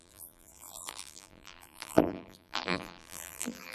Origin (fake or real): fake